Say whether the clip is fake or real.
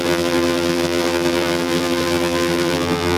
fake